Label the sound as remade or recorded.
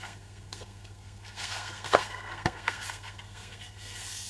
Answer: remade